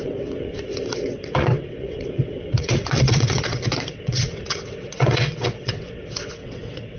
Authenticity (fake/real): fake